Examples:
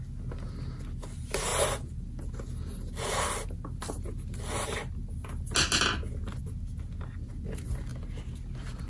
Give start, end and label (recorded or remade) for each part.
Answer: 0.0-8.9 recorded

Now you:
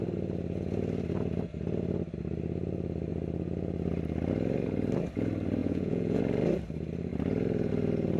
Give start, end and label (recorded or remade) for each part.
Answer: 0.0-5.6 recorded; 5.6-6.2 remade; 6.2-8.2 recorded

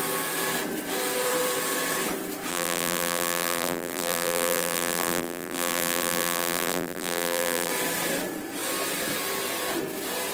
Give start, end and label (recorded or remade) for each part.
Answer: 0.0-2.5 recorded; 2.5-7.7 remade; 7.7-10.3 recorded

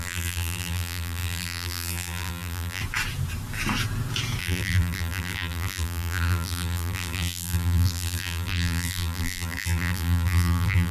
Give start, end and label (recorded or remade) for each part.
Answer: 0.0-2.8 remade; 2.8-4.4 recorded; 4.4-10.9 remade

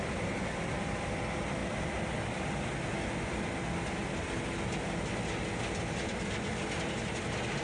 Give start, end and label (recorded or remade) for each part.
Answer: 0.0-7.6 recorded

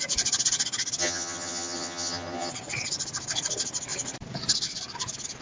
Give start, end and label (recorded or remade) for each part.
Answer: 0.0-1.0 recorded; 1.0-2.5 remade; 2.5-5.4 recorded